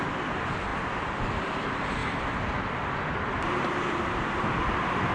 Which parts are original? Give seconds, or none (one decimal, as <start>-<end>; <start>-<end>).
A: 0.0-5.1